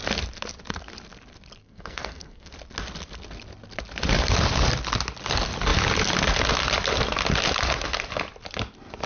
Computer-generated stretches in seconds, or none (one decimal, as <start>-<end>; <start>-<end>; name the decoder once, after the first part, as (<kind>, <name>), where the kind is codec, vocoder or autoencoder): 1.6-2.5 (codec, SNAC)